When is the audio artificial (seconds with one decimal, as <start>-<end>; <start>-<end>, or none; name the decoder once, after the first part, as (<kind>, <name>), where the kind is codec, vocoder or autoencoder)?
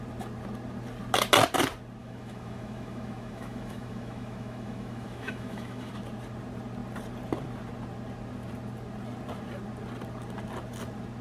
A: 2.0-5.9 (autoencoder, DAC-VAE)